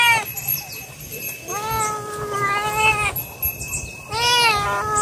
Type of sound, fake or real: real